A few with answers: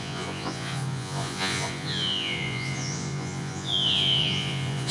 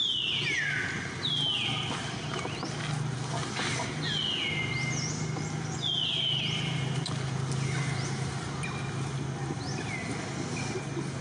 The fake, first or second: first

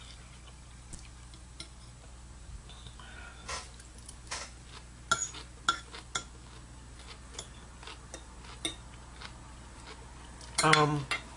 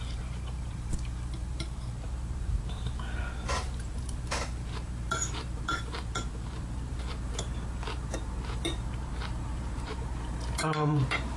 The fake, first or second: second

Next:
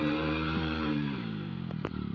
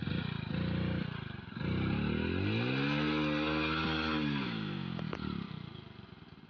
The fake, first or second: first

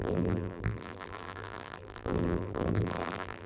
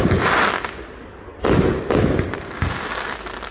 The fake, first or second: first